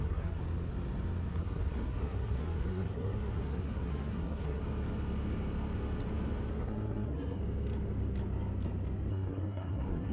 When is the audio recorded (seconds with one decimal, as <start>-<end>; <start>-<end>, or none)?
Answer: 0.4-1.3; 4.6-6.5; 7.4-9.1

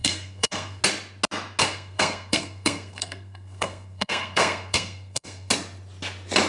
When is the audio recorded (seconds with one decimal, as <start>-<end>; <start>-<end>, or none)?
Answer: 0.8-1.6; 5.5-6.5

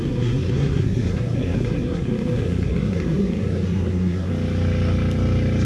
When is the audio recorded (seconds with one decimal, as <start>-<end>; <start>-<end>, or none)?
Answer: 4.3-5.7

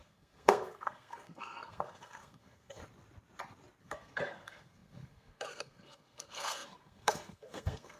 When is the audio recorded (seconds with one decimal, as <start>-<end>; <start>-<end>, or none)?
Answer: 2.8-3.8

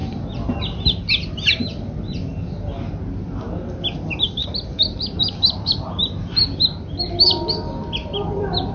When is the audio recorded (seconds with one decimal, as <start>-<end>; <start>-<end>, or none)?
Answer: 0.0-8.7